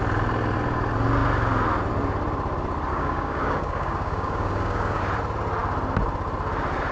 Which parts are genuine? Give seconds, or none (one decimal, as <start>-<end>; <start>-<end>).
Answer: 0.0-2.9; 5.0-6.9